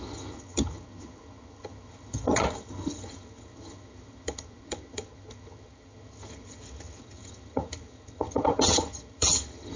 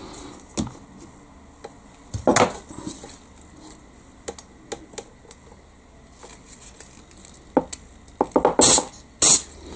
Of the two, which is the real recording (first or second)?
second